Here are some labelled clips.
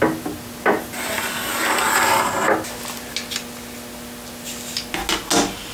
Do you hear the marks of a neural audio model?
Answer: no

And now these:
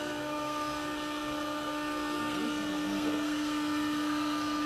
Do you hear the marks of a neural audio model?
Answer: yes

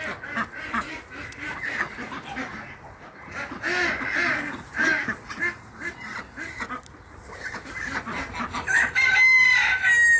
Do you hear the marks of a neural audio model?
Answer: no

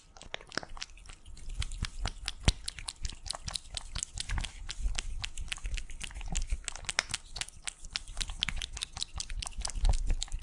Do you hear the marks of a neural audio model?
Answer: no